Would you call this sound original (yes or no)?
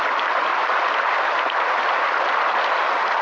yes